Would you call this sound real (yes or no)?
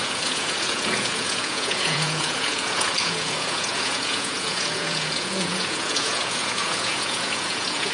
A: no